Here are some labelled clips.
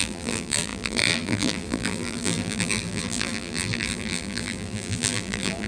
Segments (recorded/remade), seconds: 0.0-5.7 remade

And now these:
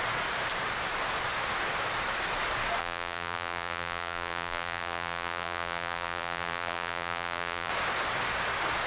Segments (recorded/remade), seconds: 0.0-2.8 recorded; 2.8-7.7 remade; 7.7-8.9 recorded